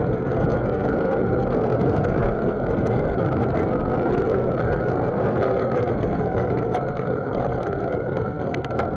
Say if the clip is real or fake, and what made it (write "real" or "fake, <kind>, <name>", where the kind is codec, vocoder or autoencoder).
fake, codec, SNAC